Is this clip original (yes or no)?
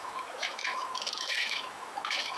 no